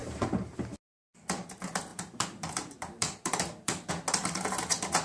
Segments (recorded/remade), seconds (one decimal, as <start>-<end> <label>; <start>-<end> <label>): 0.0-0.6 remade; 0.6-1.9 recorded; 1.9-3.9 remade; 3.9-5.0 recorded